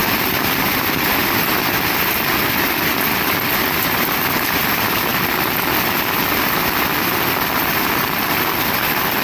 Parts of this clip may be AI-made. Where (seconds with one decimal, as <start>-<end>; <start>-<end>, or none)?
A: none